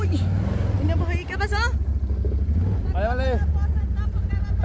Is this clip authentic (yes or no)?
yes